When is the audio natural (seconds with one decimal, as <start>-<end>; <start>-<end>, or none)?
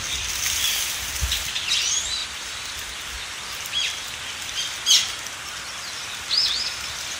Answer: 2.2-6.5